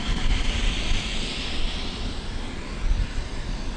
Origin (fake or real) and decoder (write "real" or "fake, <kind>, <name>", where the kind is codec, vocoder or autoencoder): real